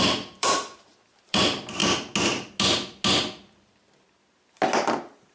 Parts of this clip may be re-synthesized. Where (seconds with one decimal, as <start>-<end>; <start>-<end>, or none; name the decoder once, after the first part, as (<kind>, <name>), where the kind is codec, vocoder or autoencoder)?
0.0-1.8 (vocoder, BigVGAN v2)